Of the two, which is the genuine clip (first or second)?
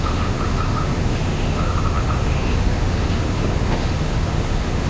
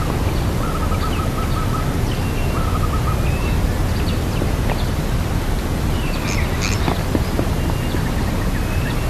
second